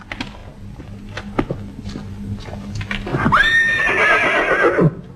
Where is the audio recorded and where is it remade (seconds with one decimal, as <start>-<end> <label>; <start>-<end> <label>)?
0.0-5.2 recorded